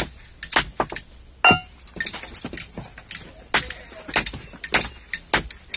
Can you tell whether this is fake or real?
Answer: real